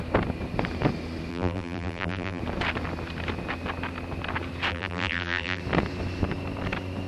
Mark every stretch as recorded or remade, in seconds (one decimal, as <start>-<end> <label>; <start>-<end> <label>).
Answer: 0.0-1.3 recorded; 1.3-2.4 remade; 2.4-4.7 recorded; 4.7-5.6 remade; 5.6-7.1 recorded